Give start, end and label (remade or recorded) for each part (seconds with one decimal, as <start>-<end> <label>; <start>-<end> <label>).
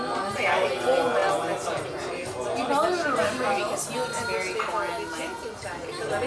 0.0-6.3 recorded